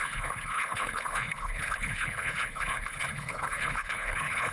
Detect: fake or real fake